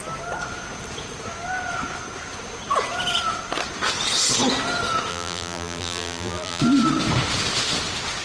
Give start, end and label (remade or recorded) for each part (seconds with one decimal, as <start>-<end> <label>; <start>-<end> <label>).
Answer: 0.0-5.1 recorded; 5.1-6.6 remade; 6.6-8.2 recorded